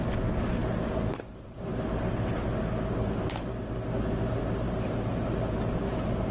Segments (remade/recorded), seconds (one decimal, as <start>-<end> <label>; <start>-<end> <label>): 0.0-6.3 recorded